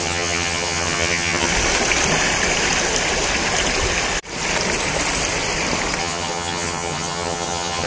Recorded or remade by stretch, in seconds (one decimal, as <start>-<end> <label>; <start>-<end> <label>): 0.0-1.5 remade; 1.5-6.0 recorded; 6.0-7.9 remade